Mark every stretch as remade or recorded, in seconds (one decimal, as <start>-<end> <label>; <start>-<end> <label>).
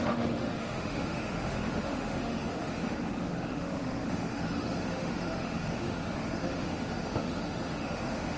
0.0-8.4 remade